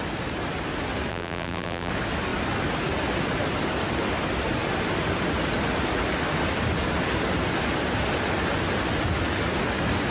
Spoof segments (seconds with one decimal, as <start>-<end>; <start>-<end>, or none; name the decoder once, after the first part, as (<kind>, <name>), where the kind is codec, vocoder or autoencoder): 1.1-1.9 (vocoder, BigVGAN v2)